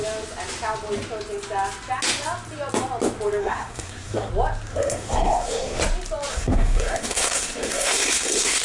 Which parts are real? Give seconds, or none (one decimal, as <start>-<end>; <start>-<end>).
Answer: 0.0-3.4; 4.3-4.7; 5.8-6.3